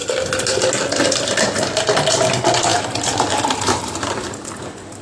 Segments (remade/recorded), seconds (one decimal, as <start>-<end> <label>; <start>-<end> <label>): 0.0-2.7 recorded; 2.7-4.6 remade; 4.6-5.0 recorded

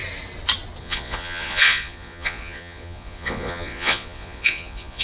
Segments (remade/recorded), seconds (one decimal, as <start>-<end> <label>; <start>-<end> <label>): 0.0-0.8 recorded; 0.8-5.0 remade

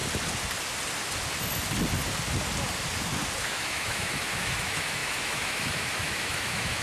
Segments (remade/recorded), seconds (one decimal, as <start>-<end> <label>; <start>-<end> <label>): 0.0-3.4 recorded; 3.4-6.8 remade

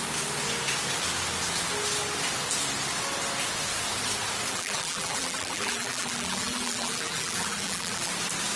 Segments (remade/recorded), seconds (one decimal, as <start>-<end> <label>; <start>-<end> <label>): 0.0-4.5 recorded; 4.5-8.1 remade; 8.1-8.6 recorded

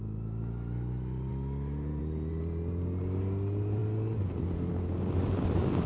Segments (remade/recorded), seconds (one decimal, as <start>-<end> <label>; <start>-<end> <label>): 0.0-5.9 recorded

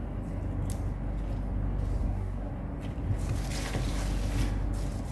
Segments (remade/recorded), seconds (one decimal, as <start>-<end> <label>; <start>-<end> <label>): 0.0-2.0 recorded; 2.0-2.5 remade; 2.5-5.1 recorded

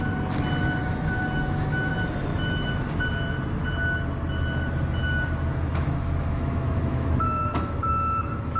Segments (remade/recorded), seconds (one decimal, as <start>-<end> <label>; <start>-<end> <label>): 0.0-0.8 recorded; 0.8-1.9 remade; 1.9-2.3 recorded; 2.3-2.9 remade; 2.9-5.0 recorded; 5.0-8.6 remade